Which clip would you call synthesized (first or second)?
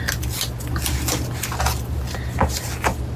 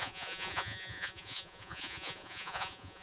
second